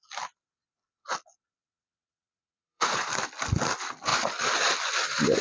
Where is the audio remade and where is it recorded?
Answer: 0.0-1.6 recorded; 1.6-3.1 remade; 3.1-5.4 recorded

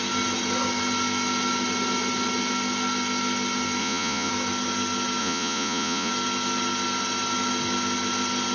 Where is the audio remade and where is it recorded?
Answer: 0.0-3.8 recorded; 3.8-4.3 remade; 4.3-5.2 recorded; 5.2-6.1 remade; 6.1-8.5 recorded

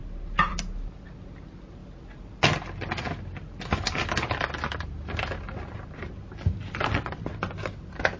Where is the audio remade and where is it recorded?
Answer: 0.0-8.2 recorded

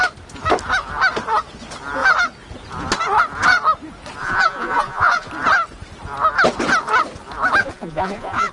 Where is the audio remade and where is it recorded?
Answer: 0.0-4.2 recorded; 4.2-5.3 remade; 5.3-7.6 recorded; 7.6-8.5 remade

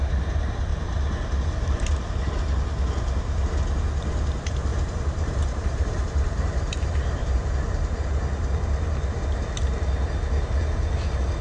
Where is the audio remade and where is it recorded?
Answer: 0.0-4.7 recorded; 4.7-7.5 remade; 7.5-11.4 recorded

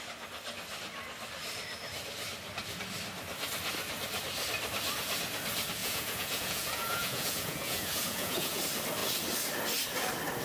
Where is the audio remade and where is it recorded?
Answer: 0.0-5.8 recorded; 5.8-8.6 remade; 8.6-10.4 recorded

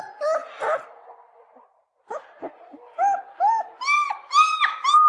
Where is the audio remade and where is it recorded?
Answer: 0.0-5.1 recorded